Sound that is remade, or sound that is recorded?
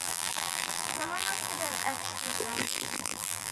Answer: remade